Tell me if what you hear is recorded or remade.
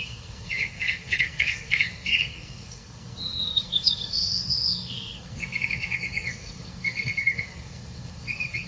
remade